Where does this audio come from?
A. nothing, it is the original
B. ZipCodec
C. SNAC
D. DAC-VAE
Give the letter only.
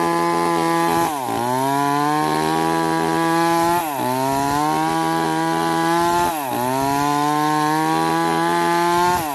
A